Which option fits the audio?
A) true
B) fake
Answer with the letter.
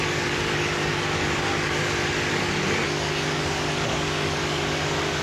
B